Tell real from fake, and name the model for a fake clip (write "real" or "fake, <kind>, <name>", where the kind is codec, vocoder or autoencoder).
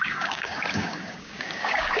fake, codec, DAC